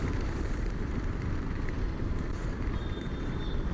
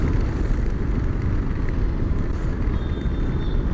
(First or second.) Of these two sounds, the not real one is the first